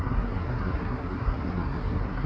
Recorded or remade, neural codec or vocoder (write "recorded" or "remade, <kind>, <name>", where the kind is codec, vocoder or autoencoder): remade, codec, SNAC